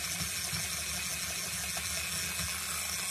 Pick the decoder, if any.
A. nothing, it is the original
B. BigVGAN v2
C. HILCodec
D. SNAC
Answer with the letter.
A